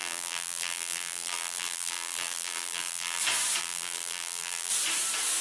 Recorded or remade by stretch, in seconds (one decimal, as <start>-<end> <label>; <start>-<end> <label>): 0.0-3.2 remade; 3.2-3.6 recorded; 3.6-4.7 remade; 4.7-5.4 recorded